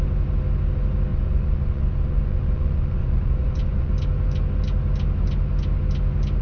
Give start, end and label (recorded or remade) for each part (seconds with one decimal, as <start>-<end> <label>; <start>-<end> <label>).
0.0-1.1 recorded; 1.1-3.9 remade; 3.9-6.4 recorded